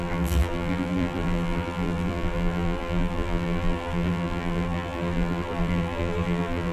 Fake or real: fake